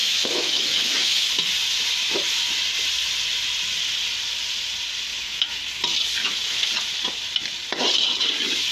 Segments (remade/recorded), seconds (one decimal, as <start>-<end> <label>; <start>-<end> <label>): 0.0-1.3 remade; 1.3-5.1 recorded; 5.1-5.6 remade; 5.6-6.2 recorded; 6.2-6.7 remade; 6.7-8.7 recorded